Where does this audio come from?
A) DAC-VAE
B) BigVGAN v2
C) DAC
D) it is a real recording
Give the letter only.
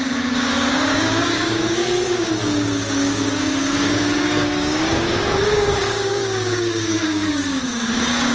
C